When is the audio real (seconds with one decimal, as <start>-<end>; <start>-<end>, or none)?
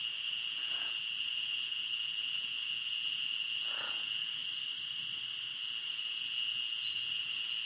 4.4-5.6